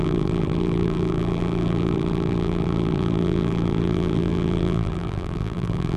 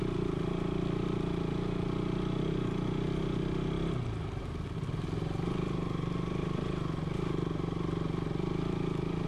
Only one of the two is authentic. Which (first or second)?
second